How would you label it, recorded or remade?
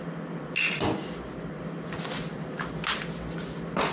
recorded